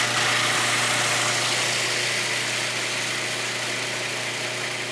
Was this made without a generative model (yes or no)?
yes